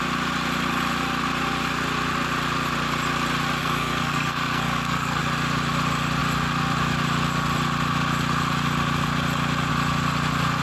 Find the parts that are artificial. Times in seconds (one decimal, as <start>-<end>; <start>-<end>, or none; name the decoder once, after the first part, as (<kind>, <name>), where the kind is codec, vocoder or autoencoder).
3.6-5.2 (codec, SNAC)